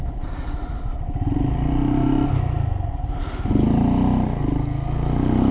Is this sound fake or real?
real